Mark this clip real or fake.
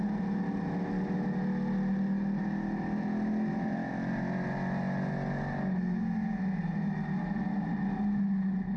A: real